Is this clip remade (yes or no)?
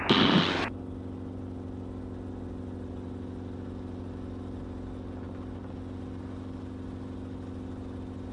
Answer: no